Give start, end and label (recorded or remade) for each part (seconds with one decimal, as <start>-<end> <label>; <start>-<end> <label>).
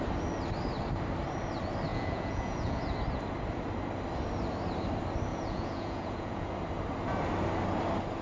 0.0-1.9 recorded; 1.9-2.8 remade; 2.8-5.3 recorded; 5.3-6.5 remade; 6.5-8.2 recorded